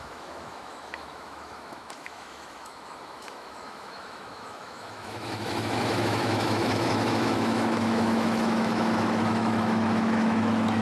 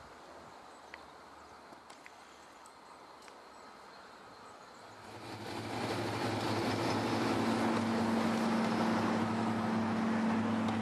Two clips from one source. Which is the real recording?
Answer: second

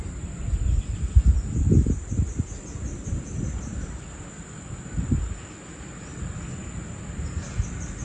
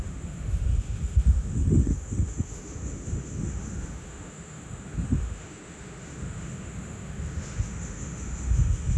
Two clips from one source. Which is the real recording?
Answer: first